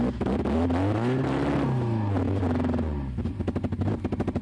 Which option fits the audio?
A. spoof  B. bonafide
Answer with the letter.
B